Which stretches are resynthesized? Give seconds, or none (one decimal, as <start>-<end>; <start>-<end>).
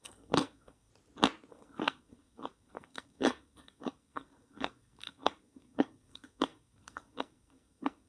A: 0.0-0.9; 1.5-8.1